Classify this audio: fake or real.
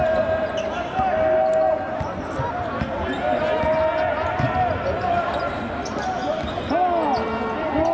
real